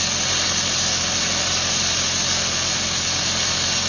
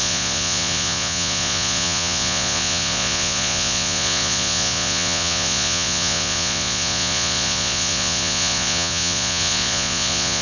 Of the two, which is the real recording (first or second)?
first